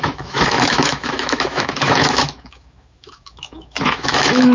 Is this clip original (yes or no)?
no